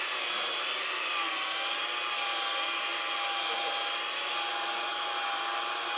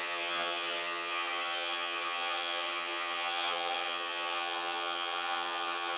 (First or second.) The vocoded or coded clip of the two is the second